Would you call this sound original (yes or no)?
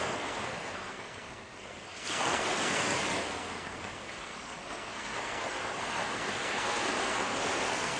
no